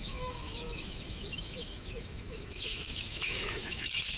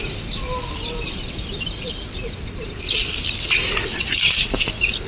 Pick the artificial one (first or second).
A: first